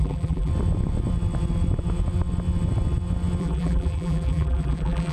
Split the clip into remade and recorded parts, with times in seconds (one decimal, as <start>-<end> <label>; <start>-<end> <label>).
0.0-0.5 remade; 0.5-3.4 recorded; 3.4-5.1 remade